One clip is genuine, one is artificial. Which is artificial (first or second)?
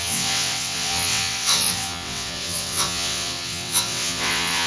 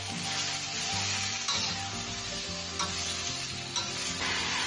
first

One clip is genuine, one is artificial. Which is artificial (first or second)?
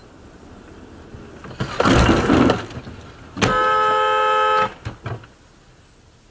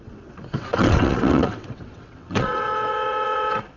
second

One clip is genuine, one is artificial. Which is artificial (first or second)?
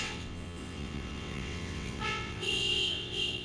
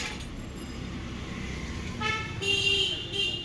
first